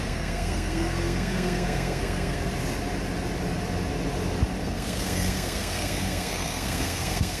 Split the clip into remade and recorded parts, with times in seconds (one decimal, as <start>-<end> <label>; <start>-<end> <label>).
0.0-2.5 remade; 2.5-4.6 recorded; 4.6-7.4 remade